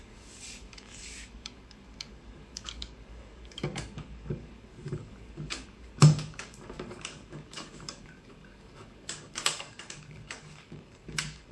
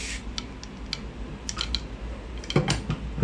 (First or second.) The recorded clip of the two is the second